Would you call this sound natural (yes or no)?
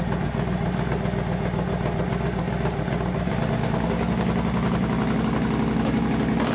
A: yes